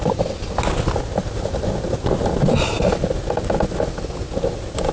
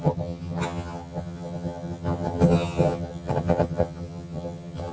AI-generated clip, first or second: second